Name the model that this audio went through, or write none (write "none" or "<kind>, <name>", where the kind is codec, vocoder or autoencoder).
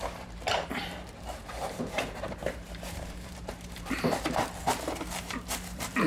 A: vocoder, BigVGAN v2